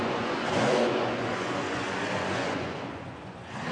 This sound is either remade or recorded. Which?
remade